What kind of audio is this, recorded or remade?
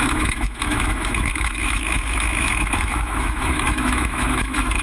remade